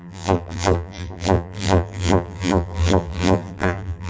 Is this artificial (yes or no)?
yes